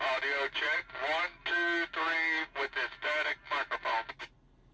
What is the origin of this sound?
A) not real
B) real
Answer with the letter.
B